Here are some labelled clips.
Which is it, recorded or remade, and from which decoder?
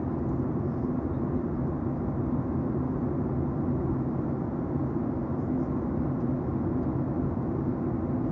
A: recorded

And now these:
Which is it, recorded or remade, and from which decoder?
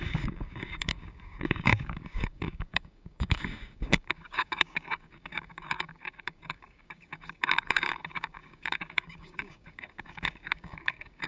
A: remade, codec, DAC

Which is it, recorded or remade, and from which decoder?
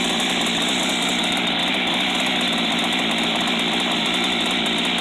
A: recorded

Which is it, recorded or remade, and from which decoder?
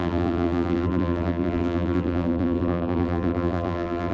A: remade, vocoder, BigVGAN v2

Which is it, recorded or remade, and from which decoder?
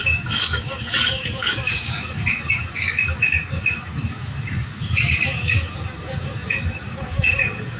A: remade, codec, DAC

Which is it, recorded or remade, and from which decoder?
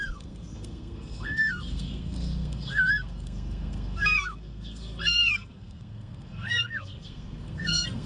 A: remade, codec, SNAC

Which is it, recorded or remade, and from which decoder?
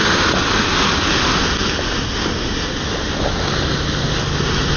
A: recorded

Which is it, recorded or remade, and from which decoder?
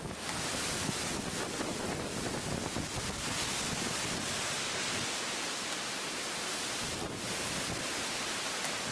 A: recorded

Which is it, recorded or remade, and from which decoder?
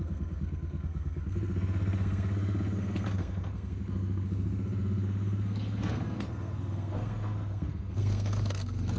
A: remade, codec, SNAC